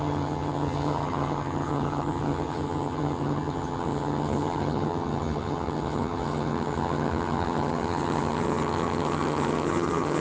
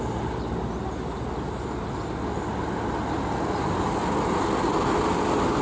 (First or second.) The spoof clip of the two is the first